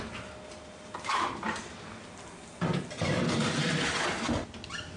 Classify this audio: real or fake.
real